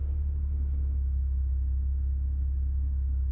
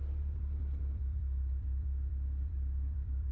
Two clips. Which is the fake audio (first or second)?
second